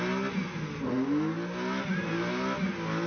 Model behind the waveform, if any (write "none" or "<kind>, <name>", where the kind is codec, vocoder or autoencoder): none